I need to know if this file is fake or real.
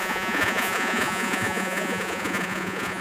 fake